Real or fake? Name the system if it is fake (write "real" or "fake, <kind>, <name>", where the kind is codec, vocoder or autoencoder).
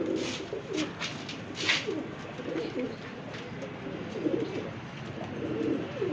real